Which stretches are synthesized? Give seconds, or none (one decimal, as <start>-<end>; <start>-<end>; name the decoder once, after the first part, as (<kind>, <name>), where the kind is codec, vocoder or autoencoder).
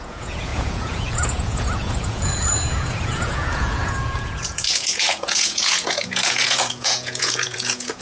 0.0-8.0 (vocoder, Vocos)